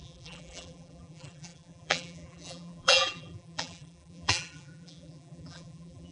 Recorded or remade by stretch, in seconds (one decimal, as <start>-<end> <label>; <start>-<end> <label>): 0.0-6.1 remade